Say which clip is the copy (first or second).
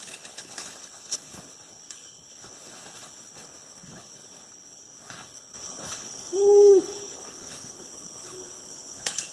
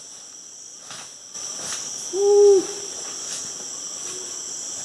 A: first